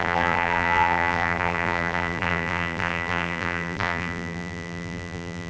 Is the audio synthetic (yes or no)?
yes